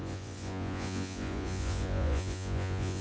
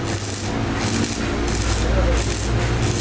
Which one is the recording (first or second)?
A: second